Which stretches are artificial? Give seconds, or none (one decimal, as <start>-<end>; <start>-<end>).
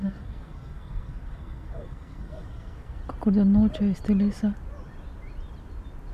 0.0-3.0